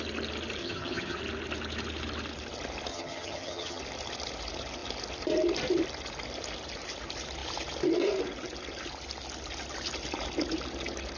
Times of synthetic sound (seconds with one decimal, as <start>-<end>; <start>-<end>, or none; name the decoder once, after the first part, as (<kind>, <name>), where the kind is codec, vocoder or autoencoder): 0.6-1.2 (vocoder, HiFi-GAN); 2.9-3.8